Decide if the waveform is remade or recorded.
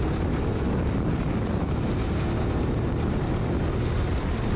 recorded